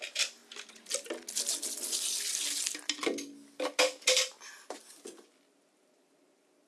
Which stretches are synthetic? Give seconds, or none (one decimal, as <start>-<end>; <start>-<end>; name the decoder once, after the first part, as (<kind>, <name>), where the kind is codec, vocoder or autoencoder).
none